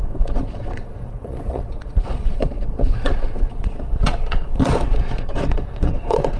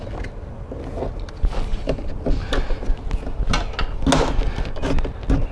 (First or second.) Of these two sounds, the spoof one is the first